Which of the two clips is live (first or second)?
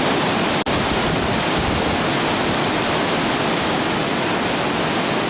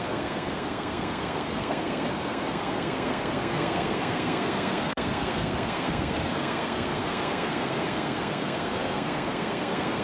first